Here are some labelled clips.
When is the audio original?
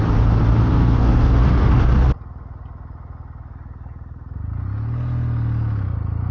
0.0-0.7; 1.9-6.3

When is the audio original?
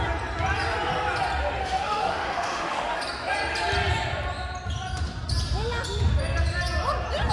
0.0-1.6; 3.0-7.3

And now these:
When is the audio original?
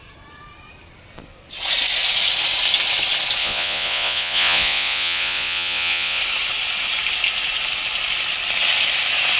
0.0-3.4; 6.2-9.4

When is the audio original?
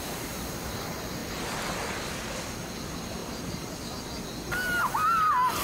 0.0-5.6